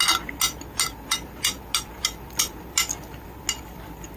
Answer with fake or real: real